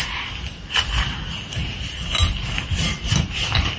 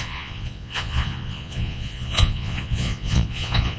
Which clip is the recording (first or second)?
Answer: first